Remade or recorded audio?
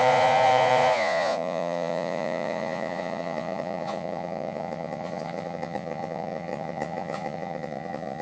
remade